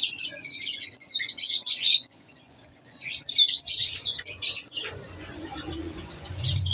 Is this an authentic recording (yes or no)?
no